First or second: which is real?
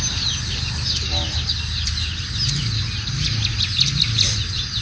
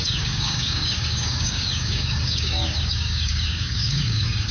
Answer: first